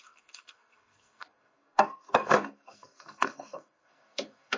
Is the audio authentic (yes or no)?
no